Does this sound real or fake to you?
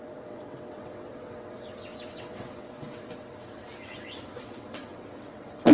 fake